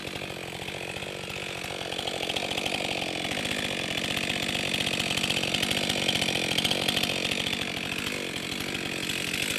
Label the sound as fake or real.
real